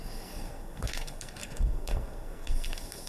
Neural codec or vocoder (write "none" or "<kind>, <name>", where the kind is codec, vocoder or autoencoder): codec, SNAC